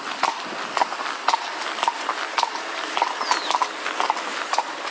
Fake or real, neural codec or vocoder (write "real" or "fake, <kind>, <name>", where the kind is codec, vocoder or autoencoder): real